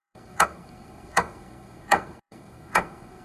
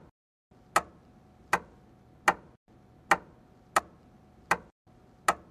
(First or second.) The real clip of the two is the second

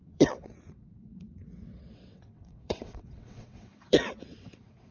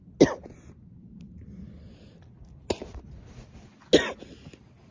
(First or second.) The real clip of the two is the second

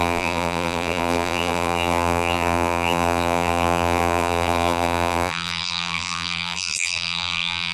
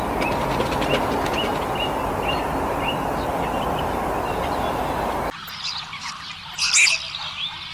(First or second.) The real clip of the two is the second